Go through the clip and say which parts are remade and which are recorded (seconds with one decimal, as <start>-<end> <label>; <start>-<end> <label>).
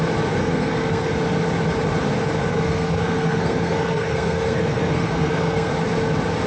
0.0-0.4 recorded; 0.4-1.1 remade; 1.1-2.5 recorded; 2.5-5.7 remade; 5.7-6.5 recorded